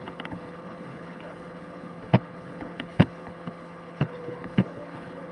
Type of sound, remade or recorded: remade